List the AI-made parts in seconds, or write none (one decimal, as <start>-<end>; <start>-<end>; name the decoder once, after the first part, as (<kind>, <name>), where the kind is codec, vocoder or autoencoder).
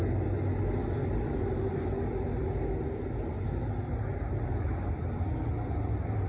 4.1-4.7 (vocoder, BigVGAN v2)